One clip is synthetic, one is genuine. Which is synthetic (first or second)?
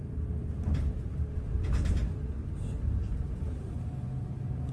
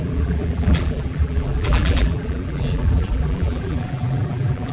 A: second